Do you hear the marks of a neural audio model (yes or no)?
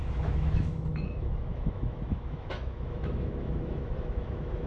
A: yes